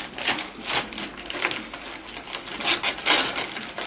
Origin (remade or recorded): recorded